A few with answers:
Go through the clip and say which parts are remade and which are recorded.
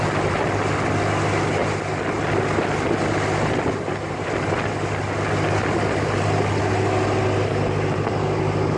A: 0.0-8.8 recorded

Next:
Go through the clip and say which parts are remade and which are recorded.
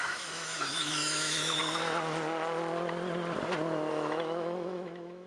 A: 0.0-1.6 remade; 1.6-3.9 recorded; 3.9-5.3 remade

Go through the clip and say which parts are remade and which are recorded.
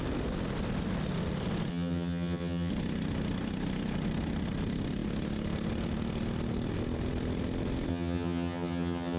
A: 0.0-1.7 recorded; 1.7-2.7 remade; 2.7-7.9 recorded; 7.9-9.2 remade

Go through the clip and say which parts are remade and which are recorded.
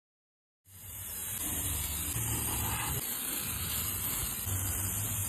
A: 0.0-5.3 recorded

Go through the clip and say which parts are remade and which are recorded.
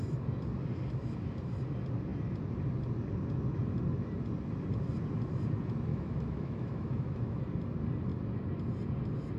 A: 0.0-5.9 recorded; 5.9-7.4 remade; 7.4-9.4 recorded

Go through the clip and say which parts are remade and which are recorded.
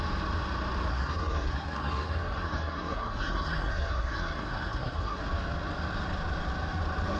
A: 0.0-0.9 recorded; 0.9-5.2 remade; 5.2-7.2 recorded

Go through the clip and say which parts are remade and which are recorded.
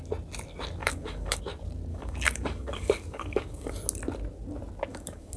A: 0.0-0.8 recorded; 0.8-1.4 remade; 1.4-1.9 recorded; 1.9-3.7 remade; 3.7-4.9 recorded; 4.9-5.4 remade